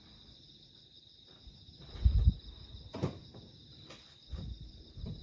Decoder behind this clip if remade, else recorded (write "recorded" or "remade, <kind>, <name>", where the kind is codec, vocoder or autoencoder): recorded